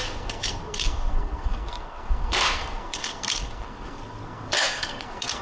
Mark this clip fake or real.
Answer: fake